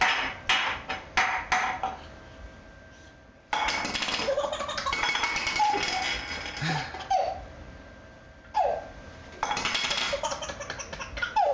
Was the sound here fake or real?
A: real